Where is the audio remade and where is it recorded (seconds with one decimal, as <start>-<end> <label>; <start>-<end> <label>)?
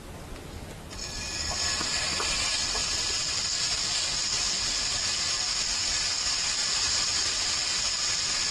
0.0-6.6 recorded; 6.6-7.3 remade; 7.3-8.5 recorded